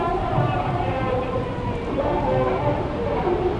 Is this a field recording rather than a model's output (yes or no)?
yes